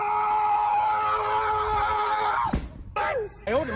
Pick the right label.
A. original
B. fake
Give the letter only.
A